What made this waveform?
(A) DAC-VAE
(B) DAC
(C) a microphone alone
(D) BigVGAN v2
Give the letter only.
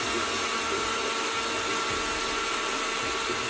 C